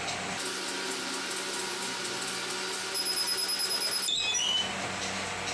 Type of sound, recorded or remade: recorded